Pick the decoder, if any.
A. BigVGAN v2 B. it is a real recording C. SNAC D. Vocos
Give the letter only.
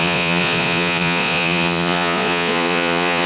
D